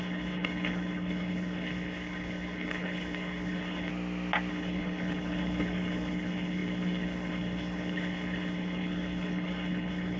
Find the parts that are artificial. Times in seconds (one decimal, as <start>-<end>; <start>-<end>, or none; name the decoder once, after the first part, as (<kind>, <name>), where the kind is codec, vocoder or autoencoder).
0.0-3.9 (codec, HILCodec); 4.5-10.2